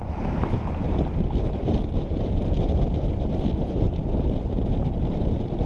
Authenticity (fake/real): fake